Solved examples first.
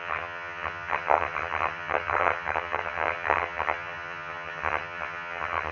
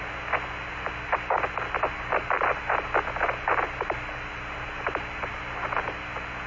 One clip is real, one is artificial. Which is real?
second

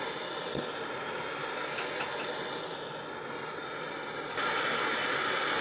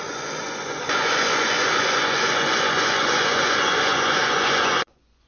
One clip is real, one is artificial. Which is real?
first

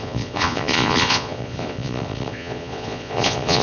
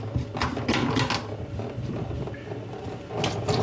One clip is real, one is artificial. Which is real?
second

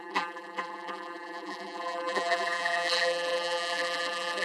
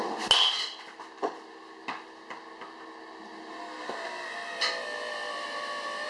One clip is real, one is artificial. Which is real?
second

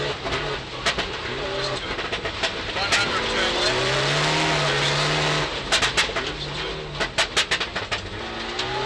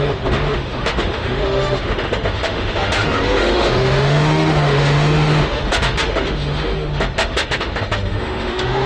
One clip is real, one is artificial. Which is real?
first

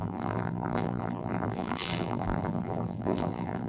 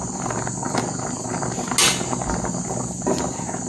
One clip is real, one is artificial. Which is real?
second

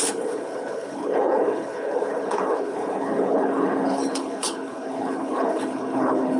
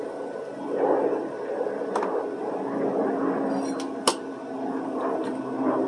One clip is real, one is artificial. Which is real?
second